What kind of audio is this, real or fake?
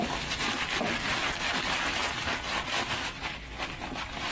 real